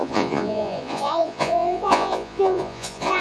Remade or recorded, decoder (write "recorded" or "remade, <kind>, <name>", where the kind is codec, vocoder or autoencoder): remade, vocoder, Vocos